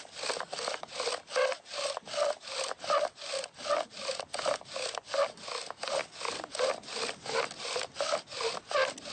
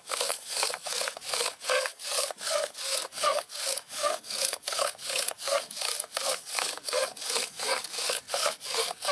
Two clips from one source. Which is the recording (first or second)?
first